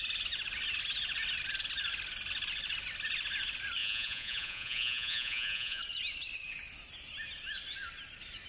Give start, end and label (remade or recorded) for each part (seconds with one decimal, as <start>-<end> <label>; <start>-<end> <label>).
0.0-3.8 recorded; 3.8-5.8 remade; 5.8-8.5 recorded